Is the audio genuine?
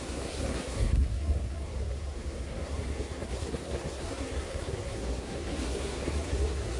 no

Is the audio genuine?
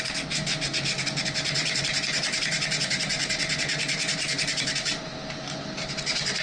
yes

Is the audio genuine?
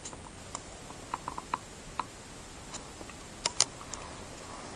yes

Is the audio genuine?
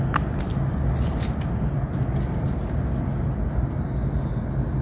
yes